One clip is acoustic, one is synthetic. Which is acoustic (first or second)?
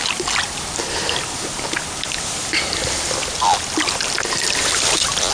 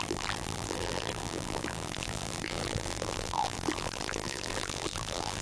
first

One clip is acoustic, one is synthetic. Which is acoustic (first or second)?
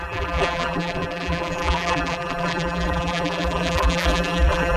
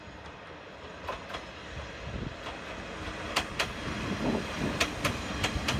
second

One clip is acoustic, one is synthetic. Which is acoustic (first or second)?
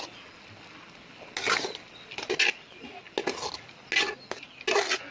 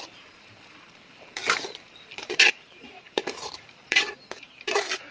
first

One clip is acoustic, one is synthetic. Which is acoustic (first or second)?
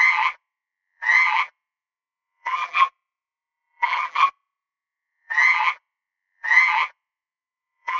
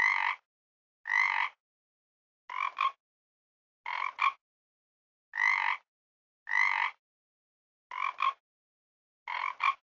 second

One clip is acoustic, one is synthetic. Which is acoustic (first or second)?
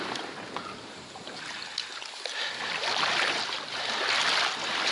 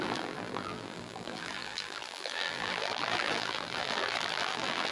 first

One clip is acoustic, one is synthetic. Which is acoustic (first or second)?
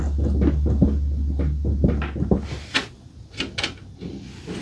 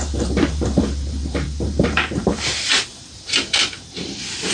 first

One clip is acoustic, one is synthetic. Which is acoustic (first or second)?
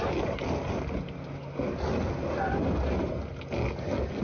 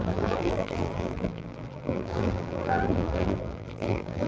first